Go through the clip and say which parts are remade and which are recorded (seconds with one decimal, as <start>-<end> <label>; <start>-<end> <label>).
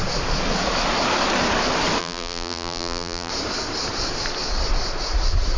0.0-2.0 recorded; 2.0-3.3 remade; 3.3-5.6 recorded